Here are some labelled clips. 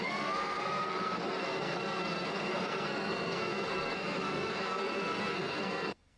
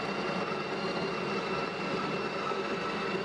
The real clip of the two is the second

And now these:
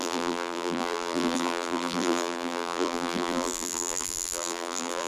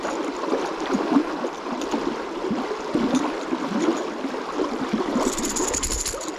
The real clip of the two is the second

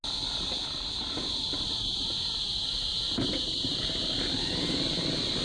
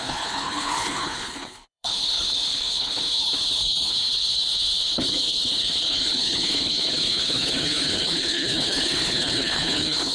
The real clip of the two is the first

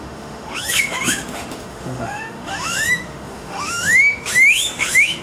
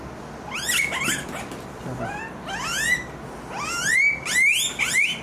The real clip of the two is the second